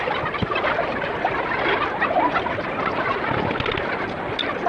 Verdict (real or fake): real